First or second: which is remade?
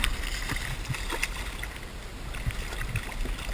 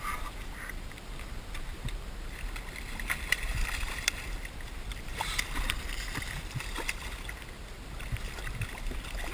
second